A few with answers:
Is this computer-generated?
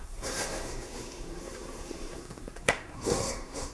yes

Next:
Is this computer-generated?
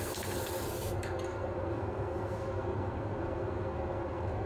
yes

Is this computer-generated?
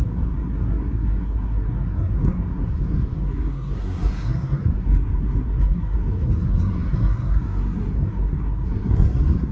yes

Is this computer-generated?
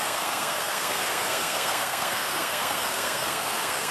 yes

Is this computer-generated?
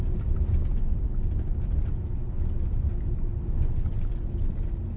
no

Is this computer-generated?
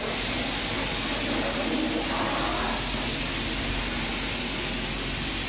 no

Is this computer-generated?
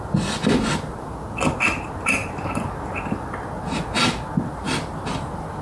no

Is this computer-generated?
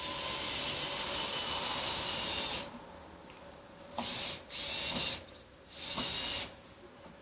no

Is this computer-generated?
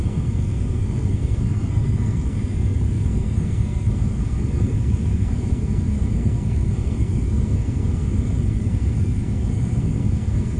yes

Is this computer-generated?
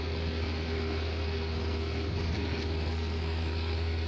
yes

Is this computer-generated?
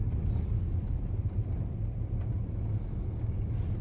no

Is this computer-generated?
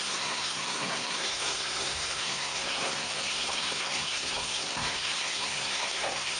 yes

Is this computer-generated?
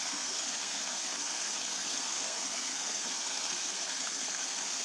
yes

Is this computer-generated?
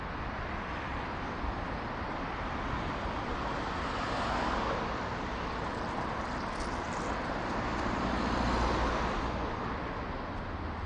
no